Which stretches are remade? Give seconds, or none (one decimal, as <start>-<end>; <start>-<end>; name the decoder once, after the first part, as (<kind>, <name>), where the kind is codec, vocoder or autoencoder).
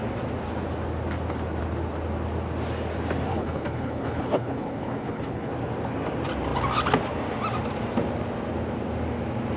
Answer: 3.3-5.5 (codec, HILCodec)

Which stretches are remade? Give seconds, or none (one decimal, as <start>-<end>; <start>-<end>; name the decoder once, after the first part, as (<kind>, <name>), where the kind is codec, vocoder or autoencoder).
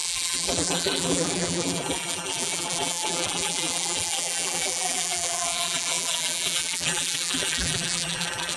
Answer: 0.0-8.6 (vocoder, BigVGAN v2)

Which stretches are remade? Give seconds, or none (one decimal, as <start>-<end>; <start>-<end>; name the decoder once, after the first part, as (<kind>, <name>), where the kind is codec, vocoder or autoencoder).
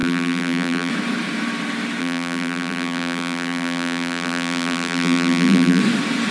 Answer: 0.0-0.9 (vocoder, BigVGAN v2); 2.0-5.8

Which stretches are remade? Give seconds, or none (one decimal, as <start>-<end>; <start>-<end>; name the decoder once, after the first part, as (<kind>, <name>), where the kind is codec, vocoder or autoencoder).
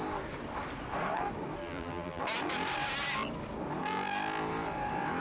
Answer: 1.6-2.2 (vocoder, BigVGAN v2)